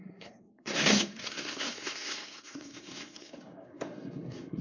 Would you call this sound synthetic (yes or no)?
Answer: yes